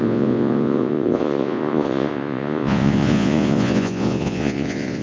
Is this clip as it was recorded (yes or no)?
no